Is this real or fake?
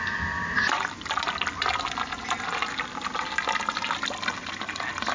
real